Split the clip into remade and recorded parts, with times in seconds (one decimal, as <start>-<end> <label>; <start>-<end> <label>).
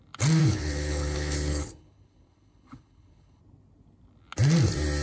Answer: 0.0-0.4 recorded; 0.4-3.4 remade; 3.4-5.0 recorded